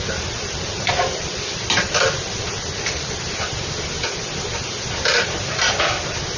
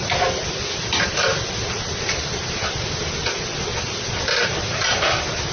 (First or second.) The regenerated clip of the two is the first